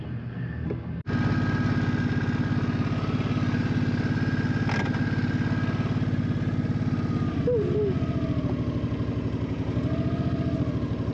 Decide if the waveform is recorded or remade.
recorded